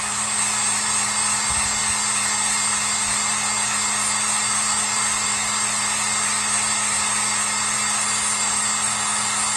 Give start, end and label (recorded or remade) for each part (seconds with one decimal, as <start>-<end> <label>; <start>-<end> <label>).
0.0-9.6 recorded